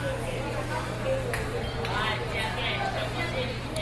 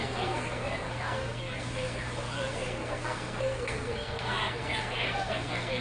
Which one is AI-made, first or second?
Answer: second